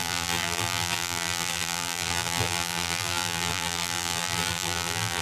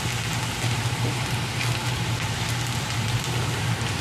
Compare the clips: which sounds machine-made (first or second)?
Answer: first